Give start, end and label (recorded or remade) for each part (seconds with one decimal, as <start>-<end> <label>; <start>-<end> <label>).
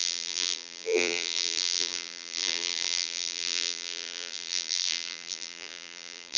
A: 0.0-6.4 remade